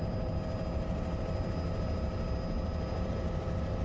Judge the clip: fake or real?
real